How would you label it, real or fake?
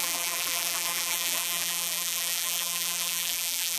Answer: fake